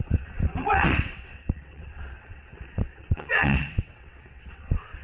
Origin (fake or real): fake